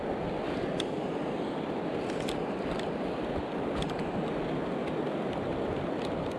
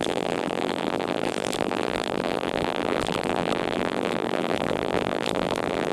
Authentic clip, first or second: first